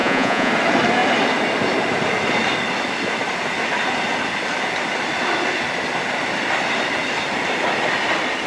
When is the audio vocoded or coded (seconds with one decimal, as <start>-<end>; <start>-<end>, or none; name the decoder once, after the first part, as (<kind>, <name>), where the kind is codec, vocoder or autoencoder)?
0.0-0.5 (vocoder, Vocos)